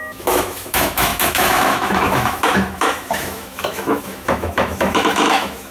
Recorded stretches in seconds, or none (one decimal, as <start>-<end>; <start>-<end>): none